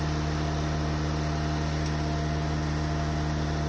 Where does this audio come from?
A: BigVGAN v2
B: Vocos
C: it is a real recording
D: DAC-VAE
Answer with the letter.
C